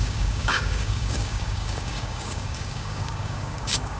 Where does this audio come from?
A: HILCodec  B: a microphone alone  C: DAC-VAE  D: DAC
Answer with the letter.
D